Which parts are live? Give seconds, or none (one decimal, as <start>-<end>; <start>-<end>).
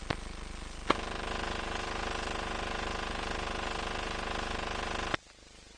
0.0-5.8